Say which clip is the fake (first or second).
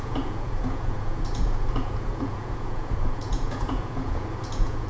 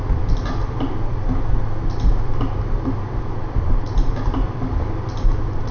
first